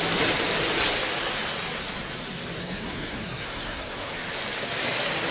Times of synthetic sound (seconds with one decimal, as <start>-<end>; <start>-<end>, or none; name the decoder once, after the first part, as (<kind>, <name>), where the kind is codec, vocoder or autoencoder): 2.6-4.1 (codec, SNAC)